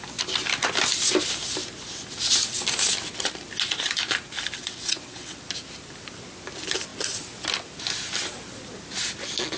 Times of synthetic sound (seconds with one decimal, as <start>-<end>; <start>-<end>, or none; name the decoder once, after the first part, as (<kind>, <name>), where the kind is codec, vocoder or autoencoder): 4.6-5.4 (vocoder, WaveNeXt)